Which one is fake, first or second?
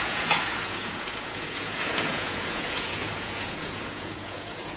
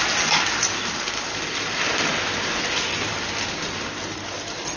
first